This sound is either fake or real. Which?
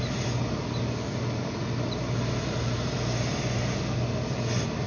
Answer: real